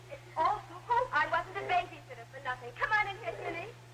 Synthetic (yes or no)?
no